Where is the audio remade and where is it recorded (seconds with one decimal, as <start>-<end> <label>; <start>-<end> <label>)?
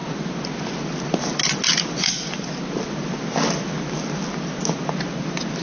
0.0-5.6 recorded